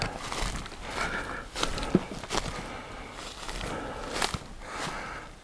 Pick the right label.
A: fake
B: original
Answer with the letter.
B